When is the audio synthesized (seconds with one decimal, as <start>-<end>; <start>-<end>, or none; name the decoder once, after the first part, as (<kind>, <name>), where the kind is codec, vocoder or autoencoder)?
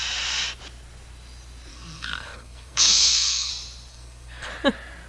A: 1.7-3.5 (codec, SNAC); 3.9-4.5